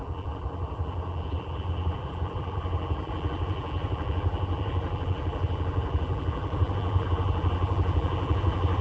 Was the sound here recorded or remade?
remade